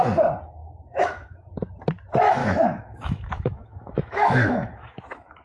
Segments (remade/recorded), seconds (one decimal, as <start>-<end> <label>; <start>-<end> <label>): 0.0-0.6 recorded; 0.6-1.5 remade; 1.5-2.4 recorded; 2.4-5.4 remade